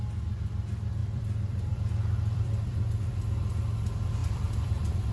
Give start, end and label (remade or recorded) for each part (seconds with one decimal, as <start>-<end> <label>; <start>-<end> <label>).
0.0-1.0 recorded; 1.0-3.2 remade; 3.2-4.2 recorded; 4.2-5.1 remade